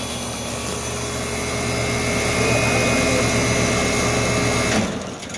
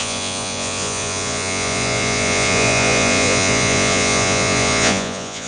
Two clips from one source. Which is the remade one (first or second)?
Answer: second